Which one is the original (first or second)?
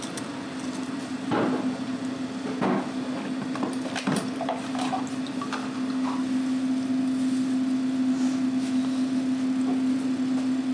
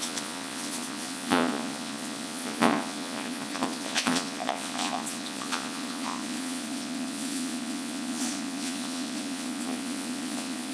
first